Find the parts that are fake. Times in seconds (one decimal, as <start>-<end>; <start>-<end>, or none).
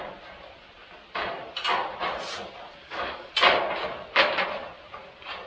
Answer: 2.8-3.3